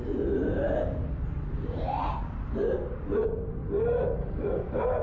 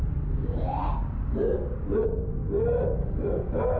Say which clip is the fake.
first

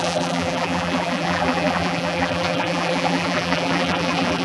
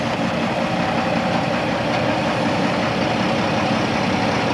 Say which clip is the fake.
first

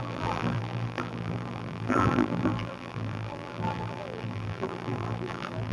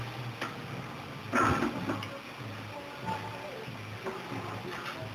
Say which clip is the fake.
first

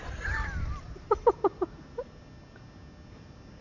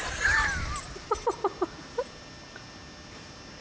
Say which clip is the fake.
second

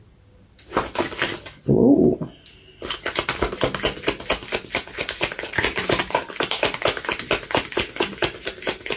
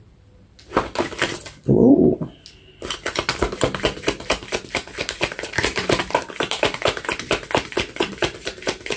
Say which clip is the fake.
second